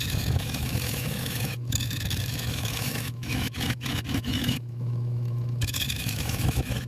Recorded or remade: remade